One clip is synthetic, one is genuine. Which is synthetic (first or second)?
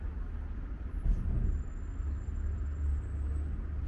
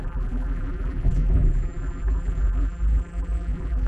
second